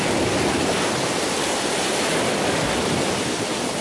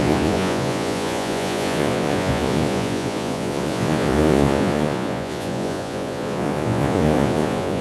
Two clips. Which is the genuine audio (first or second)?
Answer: first